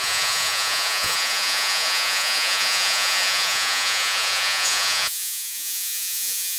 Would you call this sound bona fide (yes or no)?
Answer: no